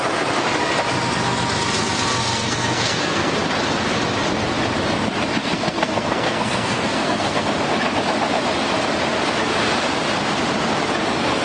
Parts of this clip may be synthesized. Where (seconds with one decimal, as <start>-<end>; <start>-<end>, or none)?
2.2-3.3; 5.4-7.5

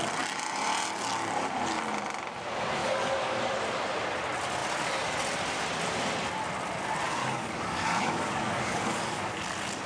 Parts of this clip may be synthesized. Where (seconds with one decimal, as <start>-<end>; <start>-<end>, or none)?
2.8-3.4; 7.2-9.3